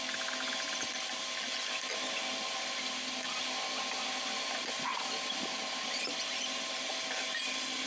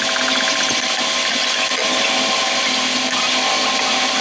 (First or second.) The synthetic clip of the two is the second